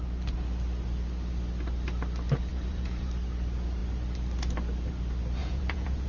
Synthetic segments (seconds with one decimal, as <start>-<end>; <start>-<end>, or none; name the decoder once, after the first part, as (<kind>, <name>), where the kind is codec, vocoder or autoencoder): 2.5-3.1 (vocoder, Vocos); 5.4-6.1